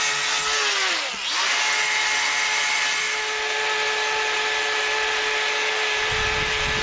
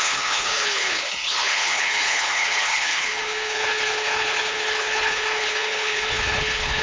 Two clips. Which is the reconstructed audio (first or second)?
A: second